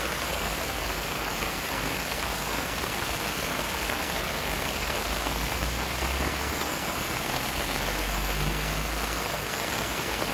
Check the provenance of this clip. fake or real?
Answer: fake